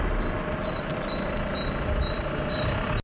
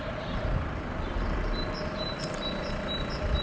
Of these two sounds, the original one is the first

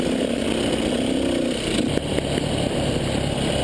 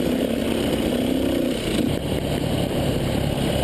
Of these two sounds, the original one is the first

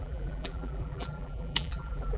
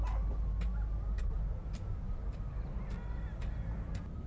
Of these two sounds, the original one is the second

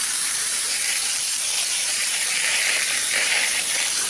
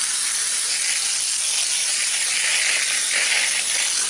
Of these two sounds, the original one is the second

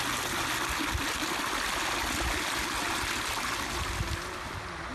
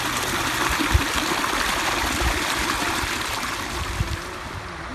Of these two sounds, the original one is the first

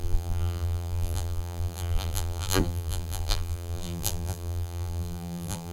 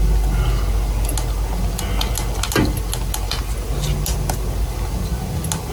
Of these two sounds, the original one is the second